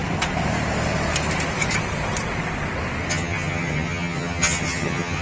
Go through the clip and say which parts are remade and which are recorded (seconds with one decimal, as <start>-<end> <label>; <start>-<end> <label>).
0.0-3.1 recorded; 3.1-5.2 remade